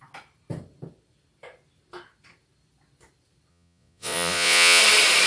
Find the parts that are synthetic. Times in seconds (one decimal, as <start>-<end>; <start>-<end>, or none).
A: 3.5-4.8

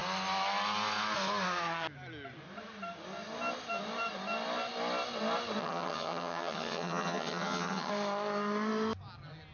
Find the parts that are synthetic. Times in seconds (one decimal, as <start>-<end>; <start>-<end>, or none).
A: 5.6-7.9

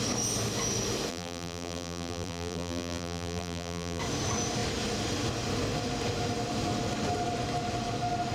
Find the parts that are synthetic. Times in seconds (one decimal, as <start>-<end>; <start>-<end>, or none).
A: 1.1-4.0